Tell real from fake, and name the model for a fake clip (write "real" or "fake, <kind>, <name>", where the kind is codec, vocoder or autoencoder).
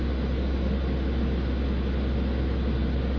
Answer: real